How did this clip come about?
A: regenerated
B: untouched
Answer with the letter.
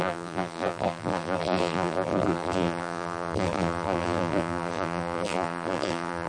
A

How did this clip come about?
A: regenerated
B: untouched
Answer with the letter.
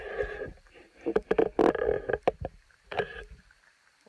A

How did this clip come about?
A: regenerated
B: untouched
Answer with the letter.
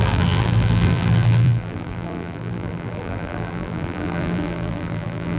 A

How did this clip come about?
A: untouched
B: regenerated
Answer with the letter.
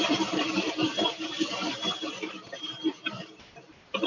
B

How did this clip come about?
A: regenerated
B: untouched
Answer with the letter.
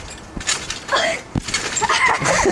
B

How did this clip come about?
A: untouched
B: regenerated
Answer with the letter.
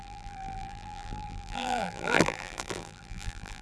B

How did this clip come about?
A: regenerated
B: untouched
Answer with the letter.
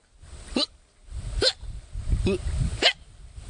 B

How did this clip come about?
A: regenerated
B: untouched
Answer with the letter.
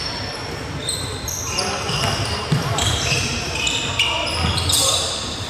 A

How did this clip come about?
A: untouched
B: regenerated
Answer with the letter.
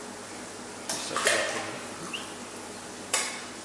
A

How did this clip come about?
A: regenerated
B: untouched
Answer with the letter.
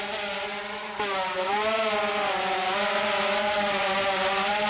A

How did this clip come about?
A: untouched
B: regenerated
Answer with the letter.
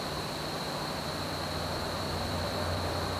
B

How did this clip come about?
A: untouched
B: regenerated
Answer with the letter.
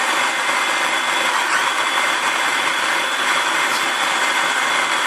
B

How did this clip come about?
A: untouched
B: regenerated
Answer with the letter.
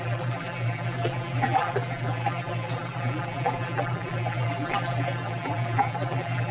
B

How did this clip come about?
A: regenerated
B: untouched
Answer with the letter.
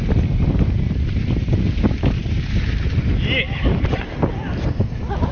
B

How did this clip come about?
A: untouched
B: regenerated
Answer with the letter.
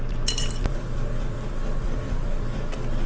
B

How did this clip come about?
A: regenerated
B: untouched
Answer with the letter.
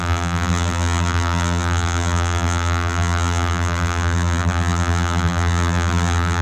A